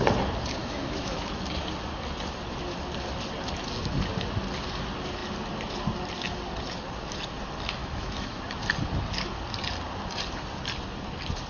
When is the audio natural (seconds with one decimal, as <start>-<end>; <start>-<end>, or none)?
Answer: 0.0-0.6; 1.4-7.8; 8.4-11.5